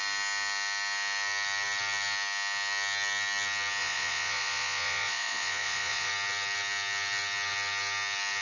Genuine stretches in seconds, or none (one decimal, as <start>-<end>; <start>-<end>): 0.0-3.8; 6.1-8.4